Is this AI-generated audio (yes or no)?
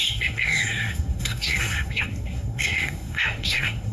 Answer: yes